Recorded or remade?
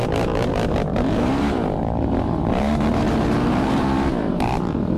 remade